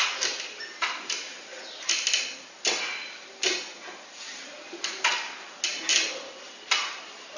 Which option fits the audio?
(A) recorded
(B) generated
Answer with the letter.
A